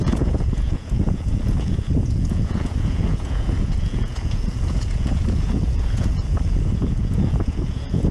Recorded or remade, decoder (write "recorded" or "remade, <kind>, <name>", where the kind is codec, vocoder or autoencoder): remade, vocoder, Vocos